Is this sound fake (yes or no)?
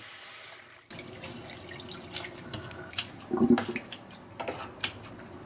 no